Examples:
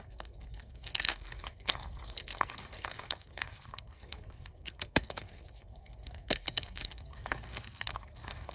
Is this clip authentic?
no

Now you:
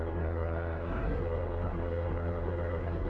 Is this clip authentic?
no